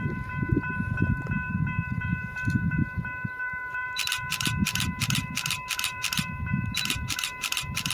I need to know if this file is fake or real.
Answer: fake